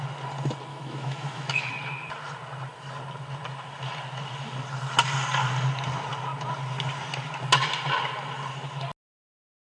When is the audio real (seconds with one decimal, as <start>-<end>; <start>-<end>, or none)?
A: 0.0-0.7; 1.7-9.8